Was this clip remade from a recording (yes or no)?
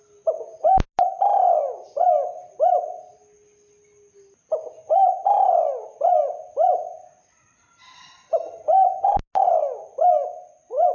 no